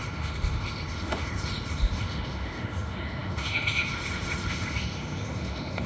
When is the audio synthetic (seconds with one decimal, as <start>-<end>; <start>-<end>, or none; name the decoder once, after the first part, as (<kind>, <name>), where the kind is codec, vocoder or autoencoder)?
0.0-5.9 (autoencoder, DAC-VAE)